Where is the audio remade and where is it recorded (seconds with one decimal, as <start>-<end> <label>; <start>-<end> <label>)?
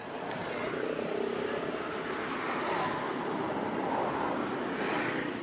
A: 0.0-5.4 recorded